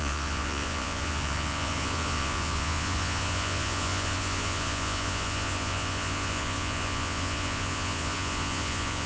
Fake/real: fake